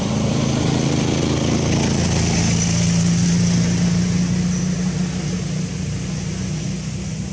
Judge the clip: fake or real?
real